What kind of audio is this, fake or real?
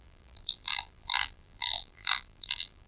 fake